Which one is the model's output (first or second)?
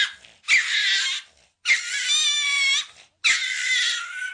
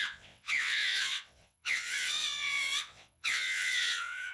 second